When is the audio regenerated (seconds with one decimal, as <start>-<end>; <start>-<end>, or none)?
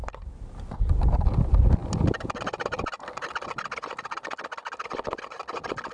none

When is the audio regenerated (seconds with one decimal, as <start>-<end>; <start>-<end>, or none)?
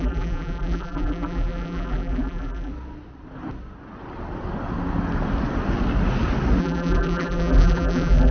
0.0-2.7; 6.6-8.3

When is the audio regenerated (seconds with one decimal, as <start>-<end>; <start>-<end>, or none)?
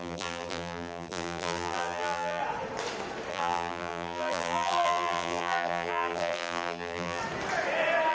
0.0-2.4; 3.3-7.2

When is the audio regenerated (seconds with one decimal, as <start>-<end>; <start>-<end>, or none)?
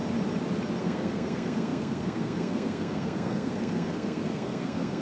0.8-5.0